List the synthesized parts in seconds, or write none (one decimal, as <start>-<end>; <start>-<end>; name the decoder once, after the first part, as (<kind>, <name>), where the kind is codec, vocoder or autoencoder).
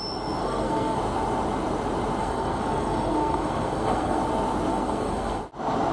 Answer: 0.4-1.0 (codec, SNAC); 2.2-4.2; 4.7-5.4